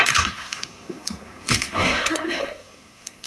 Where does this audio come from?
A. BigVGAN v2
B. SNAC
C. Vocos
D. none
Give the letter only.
B